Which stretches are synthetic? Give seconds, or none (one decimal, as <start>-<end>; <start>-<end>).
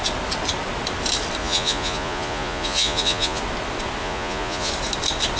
1.4-3.4; 4.0-4.7